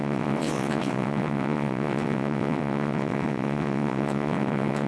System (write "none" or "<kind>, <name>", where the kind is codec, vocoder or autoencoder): vocoder, WaveNeXt